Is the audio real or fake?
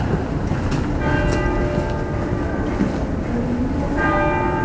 real